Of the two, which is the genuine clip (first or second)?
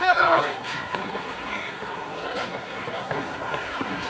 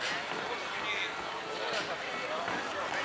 second